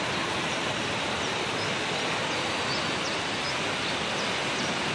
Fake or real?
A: real